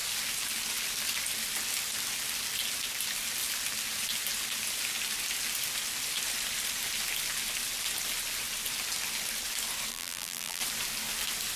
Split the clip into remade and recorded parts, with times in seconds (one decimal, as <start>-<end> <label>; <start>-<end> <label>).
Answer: 0.0-9.9 recorded; 9.9-10.6 remade; 10.6-11.6 recorded

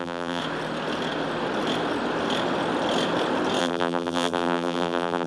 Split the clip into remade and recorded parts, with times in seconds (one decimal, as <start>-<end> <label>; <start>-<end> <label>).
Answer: 0.0-0.4 remade; 0.4-3.6 recorded; 3.6-5.3 remade

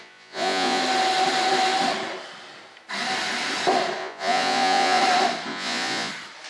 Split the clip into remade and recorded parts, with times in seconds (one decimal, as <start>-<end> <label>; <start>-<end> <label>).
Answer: 0.0-0.8 remade; 0.8-4.0 recorded; 4.0-5.0 remade; 5.0-5.5 recorded; 5.5-6.1 remade; 6.1-6.5 recorded

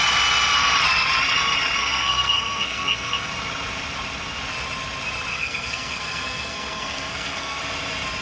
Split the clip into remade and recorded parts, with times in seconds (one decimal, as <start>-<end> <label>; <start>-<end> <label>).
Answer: 0.0-1.8 recorded; 1.8-3.3 remade; 3.3-5.3 recorded; 5.3-7.6 remade; 7.6-8.2 recorded

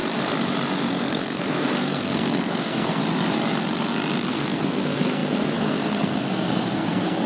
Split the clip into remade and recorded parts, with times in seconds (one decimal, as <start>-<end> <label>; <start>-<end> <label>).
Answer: 0.0-0.9 recorded; 0.9-3.0 remade; 3.0-4.3 recorded; 4.3-7.3 remade

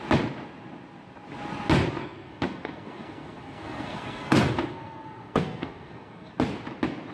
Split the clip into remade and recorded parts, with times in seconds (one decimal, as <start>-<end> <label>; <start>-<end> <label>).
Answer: 0.0-2.0 recorded; 2.0-6.3 remade; 6.3-7.1 recorded